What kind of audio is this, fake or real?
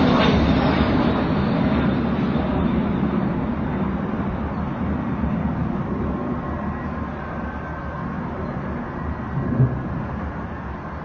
real